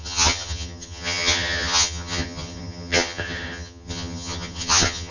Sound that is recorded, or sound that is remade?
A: remade